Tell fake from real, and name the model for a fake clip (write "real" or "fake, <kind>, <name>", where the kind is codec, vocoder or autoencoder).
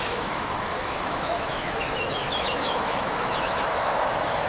fake, autoencoder, DAC-VAE